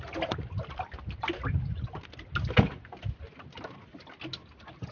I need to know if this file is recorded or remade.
recorded